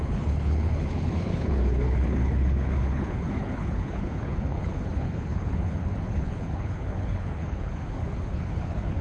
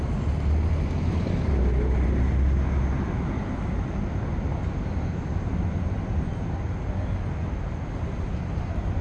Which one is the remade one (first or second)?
first